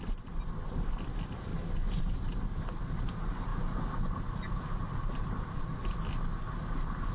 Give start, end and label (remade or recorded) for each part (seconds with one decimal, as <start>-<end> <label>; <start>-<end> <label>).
0.0-7.1 recorded